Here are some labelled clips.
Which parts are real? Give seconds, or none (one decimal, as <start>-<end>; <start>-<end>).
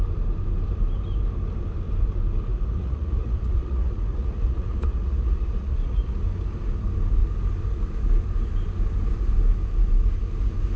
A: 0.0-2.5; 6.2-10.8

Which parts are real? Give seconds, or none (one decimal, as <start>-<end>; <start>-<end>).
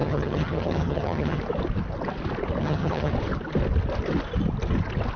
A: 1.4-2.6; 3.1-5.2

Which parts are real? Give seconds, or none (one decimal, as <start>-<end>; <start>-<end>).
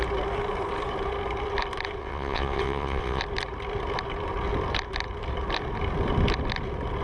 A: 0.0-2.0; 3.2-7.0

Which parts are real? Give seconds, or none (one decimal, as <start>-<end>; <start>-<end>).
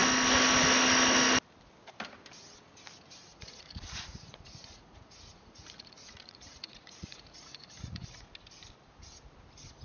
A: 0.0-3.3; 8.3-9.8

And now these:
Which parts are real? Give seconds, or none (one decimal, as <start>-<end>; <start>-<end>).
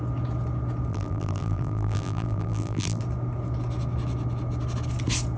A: 0.0-0.9; 3.0-5.4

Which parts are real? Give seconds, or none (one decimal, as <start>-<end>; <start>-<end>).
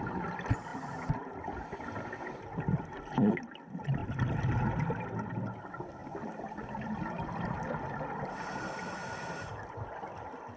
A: 4.0-5.6